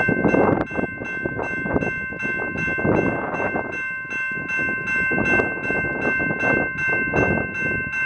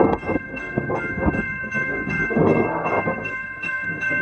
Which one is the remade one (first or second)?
second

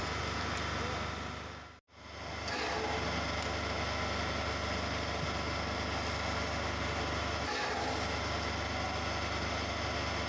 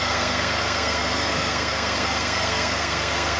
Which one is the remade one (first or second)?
second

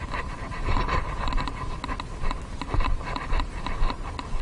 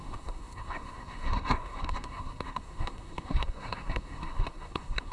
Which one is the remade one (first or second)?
second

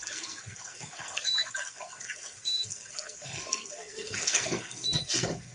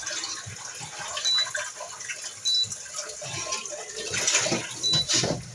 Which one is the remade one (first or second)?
first